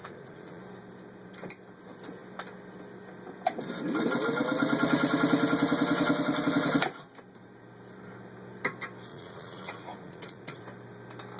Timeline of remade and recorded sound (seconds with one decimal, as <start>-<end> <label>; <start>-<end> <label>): 0.0-0.6 remade; 0.6-9.1 recorded; 9.1-10.6 remade; 10.6-11.4 recorded